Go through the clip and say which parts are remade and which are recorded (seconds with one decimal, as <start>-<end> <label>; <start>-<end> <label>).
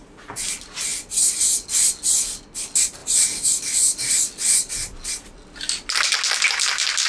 0.0-3.0 recorded; 3.0-3.5 remade; 3.5-7.1 recorded